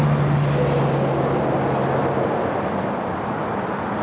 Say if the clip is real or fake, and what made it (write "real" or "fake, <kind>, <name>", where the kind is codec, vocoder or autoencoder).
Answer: real